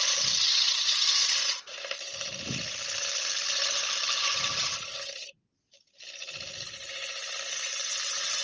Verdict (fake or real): real